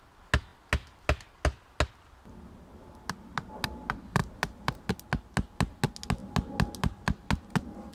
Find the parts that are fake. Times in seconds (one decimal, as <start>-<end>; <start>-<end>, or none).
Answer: none